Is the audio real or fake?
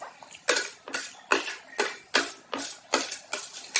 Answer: real